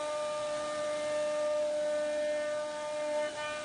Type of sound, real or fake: real